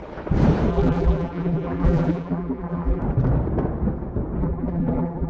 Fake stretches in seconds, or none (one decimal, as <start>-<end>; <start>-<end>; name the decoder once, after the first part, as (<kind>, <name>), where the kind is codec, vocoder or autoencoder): 0.7-3.0 (vocoder, BigVGAN v2); 4.4-5.3